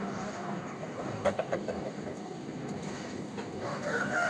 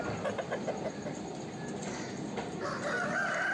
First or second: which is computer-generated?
first